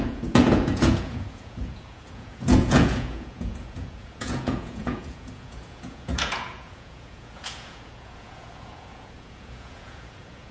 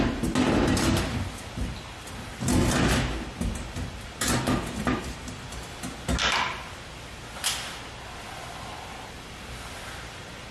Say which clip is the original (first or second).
second